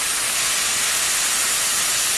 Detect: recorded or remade recorded